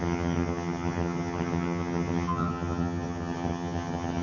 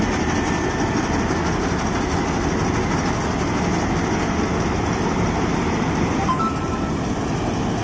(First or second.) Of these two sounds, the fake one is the first